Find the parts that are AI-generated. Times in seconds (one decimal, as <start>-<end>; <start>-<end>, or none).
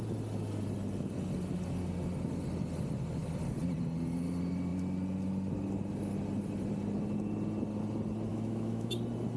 8.3-8.9